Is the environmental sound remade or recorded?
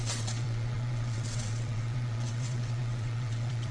remade